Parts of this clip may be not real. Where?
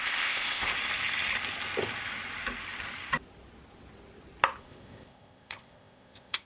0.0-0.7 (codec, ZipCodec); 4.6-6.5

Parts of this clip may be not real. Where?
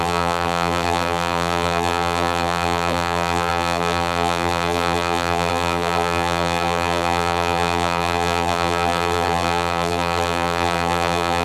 0.0-11.4 (vocoder, BigVGAN v2)